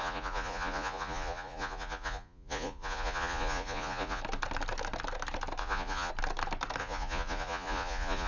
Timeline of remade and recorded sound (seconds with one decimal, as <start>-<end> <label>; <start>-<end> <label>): 0.0-4.2 remade; 4.2-5.6 recorded; 5.6-6.1 remade; 6.1-6.8 recorded; 6.8-8.3 remade